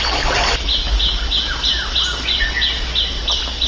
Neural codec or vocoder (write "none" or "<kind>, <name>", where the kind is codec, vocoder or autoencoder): none